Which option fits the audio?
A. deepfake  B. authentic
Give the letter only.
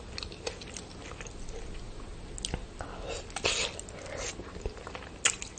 B